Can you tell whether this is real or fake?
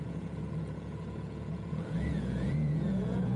fake